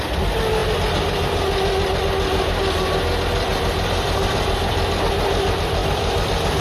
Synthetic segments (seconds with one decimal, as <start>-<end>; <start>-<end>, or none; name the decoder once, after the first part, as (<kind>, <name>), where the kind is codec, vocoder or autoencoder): 3.5-5.1 (vocoder, BigVGAN v2); 5.8-6.6